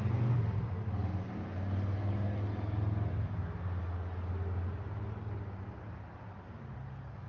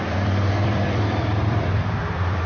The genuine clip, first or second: first